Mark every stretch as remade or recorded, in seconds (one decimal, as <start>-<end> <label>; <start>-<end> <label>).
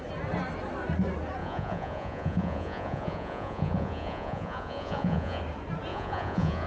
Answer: 0.0-1.4 recorded; 1.4-5.4 remade; 5.4-5.9 recorded; 5.9-6.7 remade